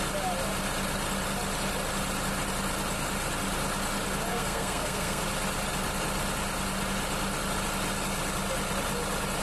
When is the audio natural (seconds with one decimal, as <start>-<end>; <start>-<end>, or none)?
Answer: 0.0-4.3; 5.2-9.4